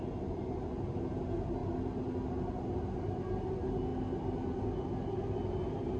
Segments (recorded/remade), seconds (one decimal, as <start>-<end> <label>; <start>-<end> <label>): 0.0-6.0 recorded